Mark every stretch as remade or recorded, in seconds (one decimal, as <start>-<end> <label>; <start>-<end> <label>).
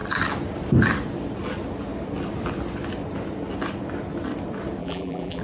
0.0-4.8 recorded; 4.8-5.4 remade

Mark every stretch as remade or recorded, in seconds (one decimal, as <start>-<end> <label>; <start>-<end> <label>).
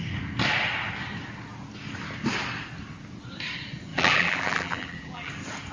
0.0-3.9 recorded; 3.9-5.3 remade; 5.3-5.7 recorded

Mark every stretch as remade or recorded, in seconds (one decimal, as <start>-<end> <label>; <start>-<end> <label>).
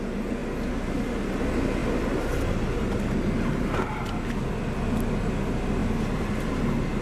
0.0-7.0 recorded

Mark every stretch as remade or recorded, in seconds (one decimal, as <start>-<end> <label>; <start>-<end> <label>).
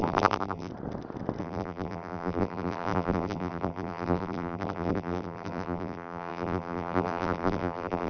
0.0-0.7 remade; 0.7-1.4 recorded; 1.4-8.1 remade